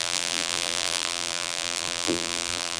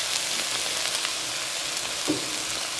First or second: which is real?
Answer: second